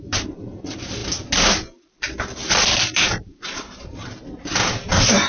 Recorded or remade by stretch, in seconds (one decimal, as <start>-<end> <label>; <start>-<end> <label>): 0.0-1.0 remade; 1.0-3.2 recorded; 3.2-3.9 remade; 3.9-4.8 recorded; 4.8-5.3 remade